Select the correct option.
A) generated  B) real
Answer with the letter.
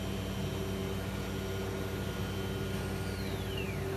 B